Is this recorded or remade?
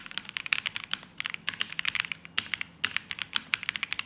recorded